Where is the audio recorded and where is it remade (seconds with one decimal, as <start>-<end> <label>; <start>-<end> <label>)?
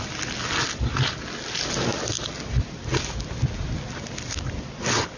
0.0-5.2 recorded